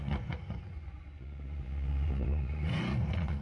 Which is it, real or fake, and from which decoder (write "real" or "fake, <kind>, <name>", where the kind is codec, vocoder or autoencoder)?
fake, vocoder, Vocos